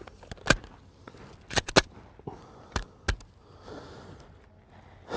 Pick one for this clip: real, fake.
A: real